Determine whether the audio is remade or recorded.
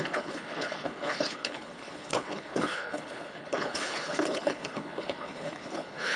remade